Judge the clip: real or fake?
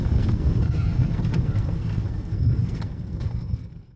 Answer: fake